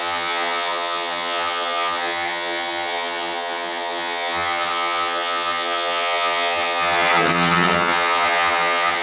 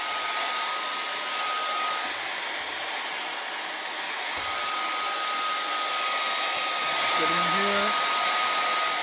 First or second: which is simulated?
first